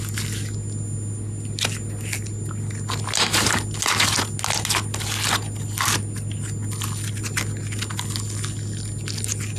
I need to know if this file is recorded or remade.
recorded